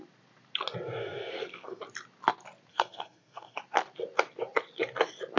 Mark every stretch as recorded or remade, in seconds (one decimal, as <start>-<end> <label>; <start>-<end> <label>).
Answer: 0.0-1.0 recorded; 1.0-1.8 remade; 1.8-2.7 recorded; 2.7-3.6 remade; 3.6-5.4 recorded